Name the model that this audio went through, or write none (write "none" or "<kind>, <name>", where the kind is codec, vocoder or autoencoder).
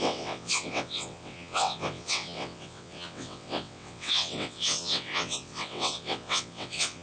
vocoder, WaveNeXt